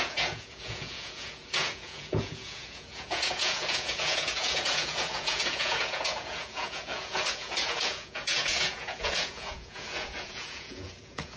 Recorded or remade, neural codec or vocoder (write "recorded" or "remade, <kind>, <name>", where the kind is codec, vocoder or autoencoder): remade, vocoder, Vocos